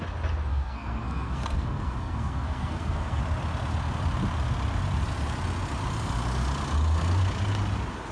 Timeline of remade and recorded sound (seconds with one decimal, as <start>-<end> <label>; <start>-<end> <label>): 0.0-0.5 recorded; 0.5-3.2 remade; 3.2-8.1 recorded